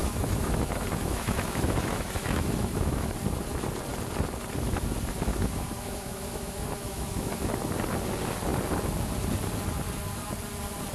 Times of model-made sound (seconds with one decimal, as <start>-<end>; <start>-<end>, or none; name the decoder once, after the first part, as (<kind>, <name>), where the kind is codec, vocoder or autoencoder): 0.0-3.1 (autoencoder, DAC-VAE); 5.3-7.5